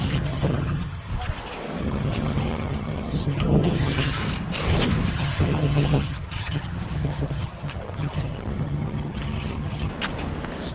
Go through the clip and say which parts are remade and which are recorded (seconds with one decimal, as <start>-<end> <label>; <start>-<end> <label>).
0.0-1.1 remade; 1.1-1.8 recorded; 1.8-4.2 remade; 4.2-5.1 recorded; 5.1-9.9 remade; 9.9-10.7 recorded

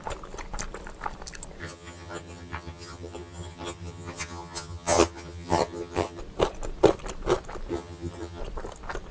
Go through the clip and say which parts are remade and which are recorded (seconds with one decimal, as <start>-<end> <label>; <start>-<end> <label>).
0.0-1.6 recorded; 1.6-6.2 remade; 6.2-7.7 recorded; 7.7-8.4 remade; 8.4-9.1 recorded

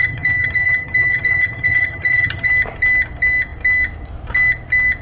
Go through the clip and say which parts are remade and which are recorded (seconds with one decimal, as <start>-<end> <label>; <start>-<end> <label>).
0.0-2.5 remade; 2.5-5.0 recorded